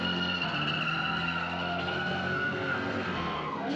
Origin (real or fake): fake